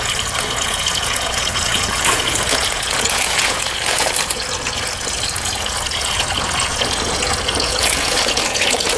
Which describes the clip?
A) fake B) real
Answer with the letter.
A